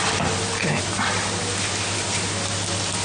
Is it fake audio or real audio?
real